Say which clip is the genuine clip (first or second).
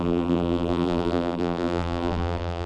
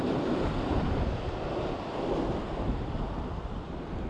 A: second